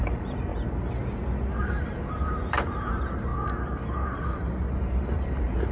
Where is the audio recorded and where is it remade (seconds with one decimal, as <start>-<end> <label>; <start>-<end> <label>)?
0.0-0.5 remade; 0.5-1.6 recorded; 1.6-3.3 remade; 3.3-4.7 recorded; 4.7-5.7 remade